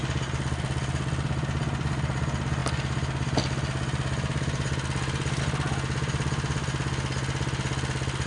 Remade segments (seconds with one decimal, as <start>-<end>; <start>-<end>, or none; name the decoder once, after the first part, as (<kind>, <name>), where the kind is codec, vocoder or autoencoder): none